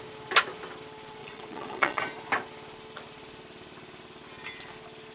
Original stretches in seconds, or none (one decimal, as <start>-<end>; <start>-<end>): 0.0-1.2; 2.0-5.1